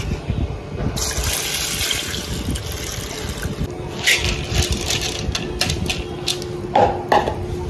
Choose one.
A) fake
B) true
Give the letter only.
B